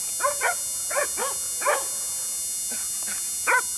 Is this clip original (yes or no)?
yes